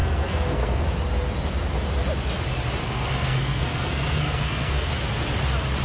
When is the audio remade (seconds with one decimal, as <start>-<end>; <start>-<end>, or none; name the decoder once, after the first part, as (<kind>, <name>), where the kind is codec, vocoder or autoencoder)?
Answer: 0.0-0.8 (codec, SNAC); 2.8-4.9